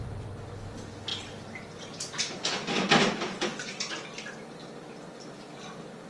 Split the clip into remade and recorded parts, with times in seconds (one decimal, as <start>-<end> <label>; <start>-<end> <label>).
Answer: 0.0-6.1 recorded